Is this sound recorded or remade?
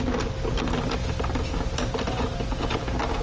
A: recorded